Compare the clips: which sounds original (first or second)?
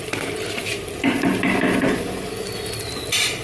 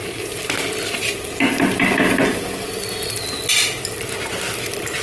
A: second